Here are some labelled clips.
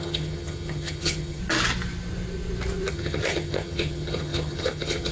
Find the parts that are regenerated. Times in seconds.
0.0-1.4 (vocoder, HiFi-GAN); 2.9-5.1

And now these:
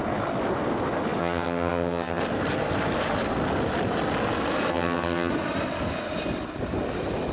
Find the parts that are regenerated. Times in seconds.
1.2-2.2 (vocoder, HiFi-GAN); 4.7-5.3

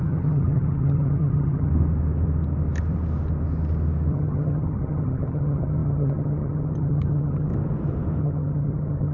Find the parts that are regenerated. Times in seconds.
0.0-1.7 (vocoder, HiFi-GAN); 4.1-7.5; 8.2-9.1